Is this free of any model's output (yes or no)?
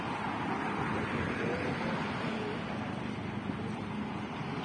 yes